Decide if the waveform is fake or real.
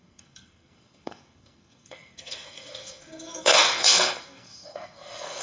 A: fake